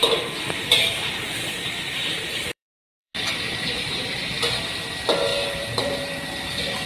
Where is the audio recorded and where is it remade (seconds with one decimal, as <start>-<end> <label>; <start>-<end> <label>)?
0.0-4.1 remade; 4.1-5.3 recorded; 5.3-5.9 remade; 5.9-6.9 recorded